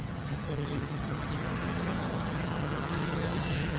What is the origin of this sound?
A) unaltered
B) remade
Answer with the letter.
B